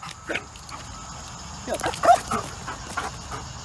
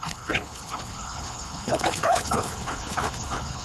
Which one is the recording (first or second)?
first